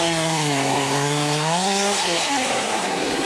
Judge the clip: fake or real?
fake